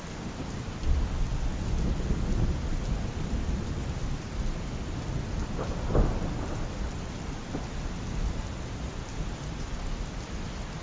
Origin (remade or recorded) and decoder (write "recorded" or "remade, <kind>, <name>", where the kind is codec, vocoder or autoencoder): recorded